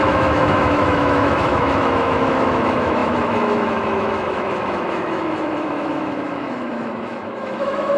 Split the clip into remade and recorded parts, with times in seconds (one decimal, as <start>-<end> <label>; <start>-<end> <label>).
0.0-8.0 remade